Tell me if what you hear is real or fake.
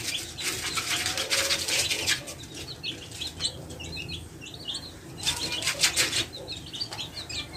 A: real